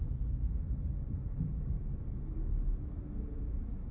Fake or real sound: real